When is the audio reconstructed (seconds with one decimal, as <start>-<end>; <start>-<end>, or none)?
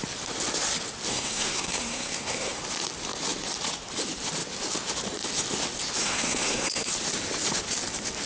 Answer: 1.1-2.6; 6.0-6.9